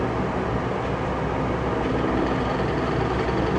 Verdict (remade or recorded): recorded